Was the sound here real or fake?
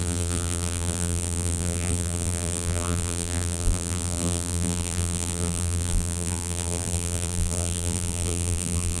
fake